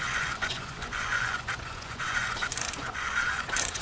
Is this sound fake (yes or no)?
yes